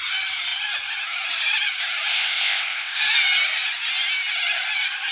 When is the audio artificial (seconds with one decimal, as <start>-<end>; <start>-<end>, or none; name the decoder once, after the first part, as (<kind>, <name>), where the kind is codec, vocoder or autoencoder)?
2.1-3.0 (codec, ZipCodec)